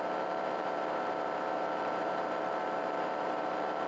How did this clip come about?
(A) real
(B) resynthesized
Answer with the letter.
B